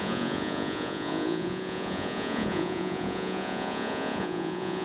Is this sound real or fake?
fake